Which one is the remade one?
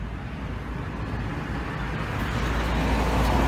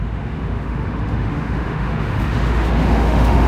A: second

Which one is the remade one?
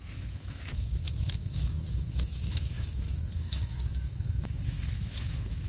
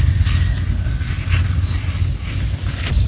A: first